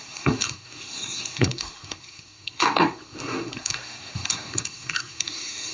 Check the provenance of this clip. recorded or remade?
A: remade